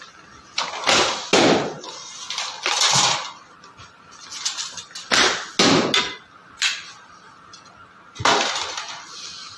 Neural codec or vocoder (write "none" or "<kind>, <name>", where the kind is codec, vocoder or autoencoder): none